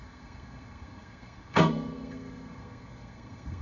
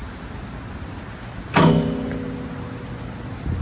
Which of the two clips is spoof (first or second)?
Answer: first